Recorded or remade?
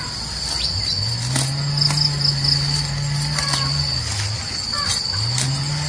recorded